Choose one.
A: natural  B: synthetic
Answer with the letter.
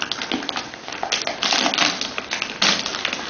A